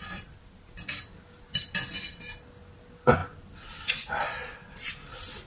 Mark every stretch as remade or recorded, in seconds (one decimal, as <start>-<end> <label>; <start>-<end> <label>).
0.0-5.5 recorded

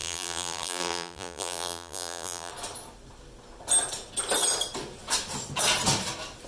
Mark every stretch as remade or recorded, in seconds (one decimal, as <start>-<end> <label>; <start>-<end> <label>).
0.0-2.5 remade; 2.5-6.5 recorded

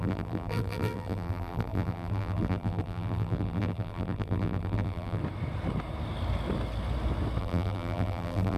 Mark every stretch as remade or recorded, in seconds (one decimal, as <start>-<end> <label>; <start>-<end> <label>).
0.0-5.2 remade; 5.2-7.4 recorded; 7.4-8.6 remade

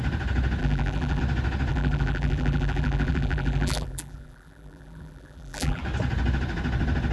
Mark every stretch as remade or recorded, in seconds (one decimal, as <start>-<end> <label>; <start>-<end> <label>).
0.0-0.6 recorded; 0.6-1.2 remade; 1.2-1.7 recorded; 1.7-5.8 remade; 5.8-7.1 recorded